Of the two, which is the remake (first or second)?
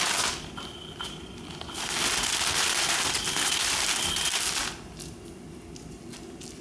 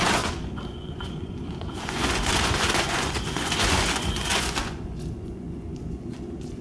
second